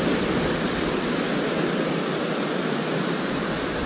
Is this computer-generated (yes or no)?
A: no